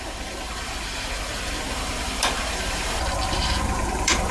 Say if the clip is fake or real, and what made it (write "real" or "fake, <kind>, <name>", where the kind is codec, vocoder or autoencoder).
fake, vocoder, BigVGAN v2